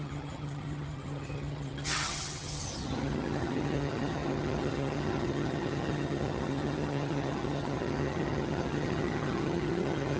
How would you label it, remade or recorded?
remade